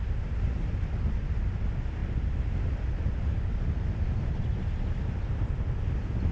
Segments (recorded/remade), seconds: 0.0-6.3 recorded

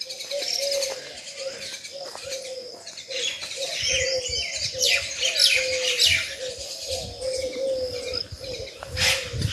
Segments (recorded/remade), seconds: 0.0-2.2 recorded; 2.2-4.2 remade; 4.2-9.5 recorded

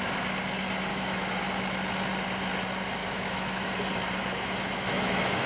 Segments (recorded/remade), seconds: 0.0-0.9 recorded; 0.9-1.4 remade; 1.4-3.0 recorded; 3.0-3.7 remade; 3.7-4.2 recorded; 4.2-5.5 remade

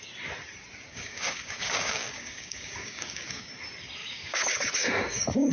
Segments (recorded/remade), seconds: 0.0-0.9 recorded; 0.9-3.5 remade; 3.5-4.0 recorded; 4.0-5.5 remade